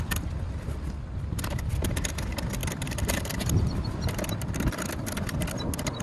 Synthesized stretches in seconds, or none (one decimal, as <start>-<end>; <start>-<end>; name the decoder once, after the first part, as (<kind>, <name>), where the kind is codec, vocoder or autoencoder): none